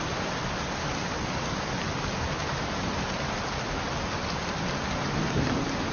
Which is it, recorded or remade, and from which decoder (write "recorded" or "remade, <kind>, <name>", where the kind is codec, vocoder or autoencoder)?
recorded